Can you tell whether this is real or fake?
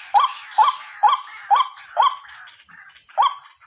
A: real